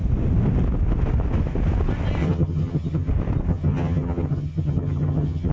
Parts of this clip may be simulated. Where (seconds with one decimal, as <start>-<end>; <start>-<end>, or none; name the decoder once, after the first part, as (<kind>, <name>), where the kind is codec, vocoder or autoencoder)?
2.2-3.1 (vocoder, HiFi-GAN); 3.5-5.5